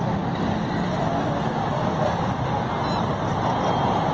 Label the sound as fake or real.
real